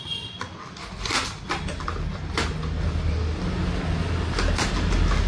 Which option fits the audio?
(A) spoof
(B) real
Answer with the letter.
B